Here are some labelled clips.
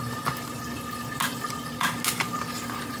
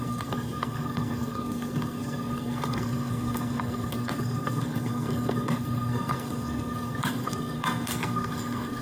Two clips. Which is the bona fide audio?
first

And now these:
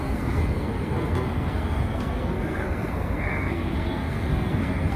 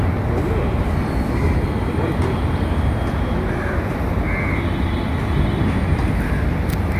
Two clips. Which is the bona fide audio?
second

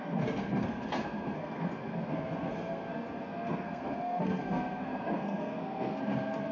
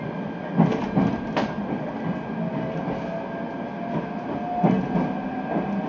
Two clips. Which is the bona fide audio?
second